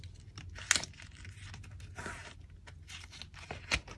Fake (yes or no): no